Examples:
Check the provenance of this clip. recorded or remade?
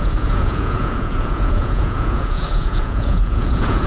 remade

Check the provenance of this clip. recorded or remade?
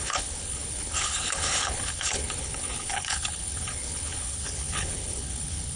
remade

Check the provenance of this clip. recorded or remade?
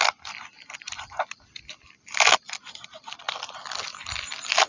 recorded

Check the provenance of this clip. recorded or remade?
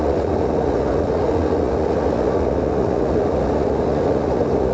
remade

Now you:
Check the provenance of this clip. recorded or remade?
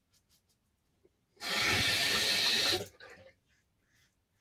recorded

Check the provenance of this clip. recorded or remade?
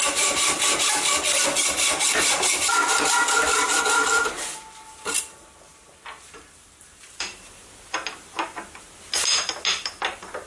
recorded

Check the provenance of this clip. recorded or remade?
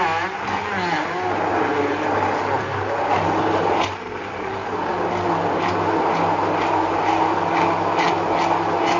recorded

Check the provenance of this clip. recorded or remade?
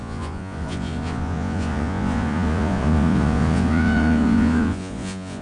remade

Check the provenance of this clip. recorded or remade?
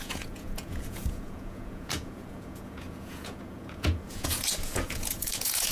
remade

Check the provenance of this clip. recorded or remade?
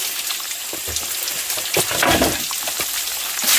recorded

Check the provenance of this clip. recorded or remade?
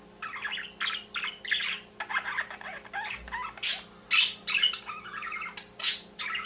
recorded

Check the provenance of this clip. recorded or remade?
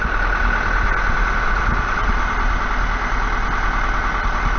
recorded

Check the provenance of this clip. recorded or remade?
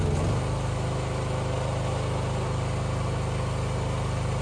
recorded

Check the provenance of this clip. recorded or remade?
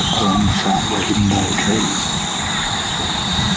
recorded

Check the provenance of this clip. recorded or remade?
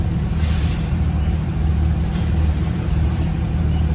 remade